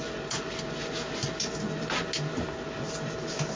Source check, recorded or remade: recorded